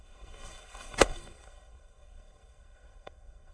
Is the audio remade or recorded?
remade